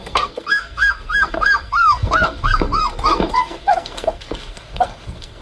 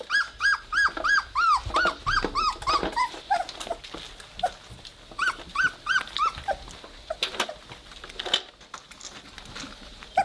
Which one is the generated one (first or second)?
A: first